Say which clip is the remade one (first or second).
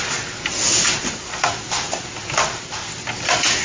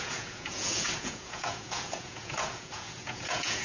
second